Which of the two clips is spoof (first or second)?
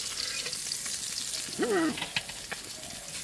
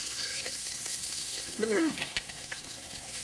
second